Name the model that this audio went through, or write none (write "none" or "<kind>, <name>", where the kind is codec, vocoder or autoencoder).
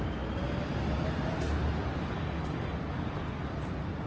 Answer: none